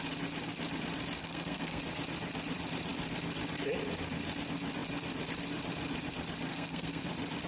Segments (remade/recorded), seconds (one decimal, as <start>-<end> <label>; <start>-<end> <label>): 0.0-1.2 recorded; 1.2-1.8 remade; 1.8-6.5 recorded; 6.5-7.0 remade; 7.0-7.5 recorded